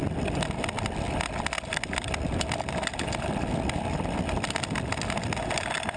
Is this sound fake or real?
real